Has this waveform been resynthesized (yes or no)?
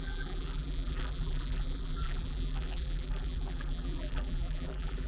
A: yes